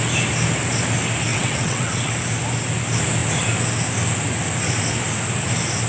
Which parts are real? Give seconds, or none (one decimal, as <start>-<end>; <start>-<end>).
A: 0.0-1.3; 2.1-5.9